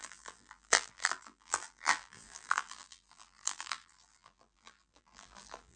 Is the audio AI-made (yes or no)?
yes